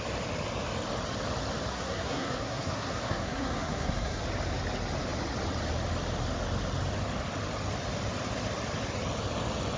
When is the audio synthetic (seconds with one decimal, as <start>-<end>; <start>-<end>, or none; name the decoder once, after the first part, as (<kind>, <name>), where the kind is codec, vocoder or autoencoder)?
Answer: 1.7-4.2 (codec, SNAC)